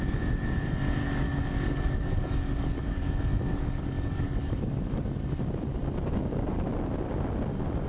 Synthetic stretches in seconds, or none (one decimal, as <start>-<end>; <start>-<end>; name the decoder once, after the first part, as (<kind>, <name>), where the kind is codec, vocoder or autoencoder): 1.0-4.9 (codec, DAC)